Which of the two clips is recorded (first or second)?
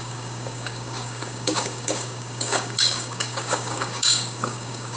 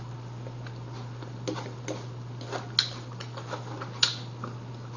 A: second